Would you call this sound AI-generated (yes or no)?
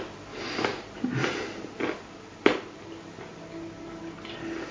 no